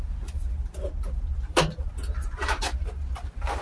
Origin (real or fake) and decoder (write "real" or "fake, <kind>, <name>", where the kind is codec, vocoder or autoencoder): real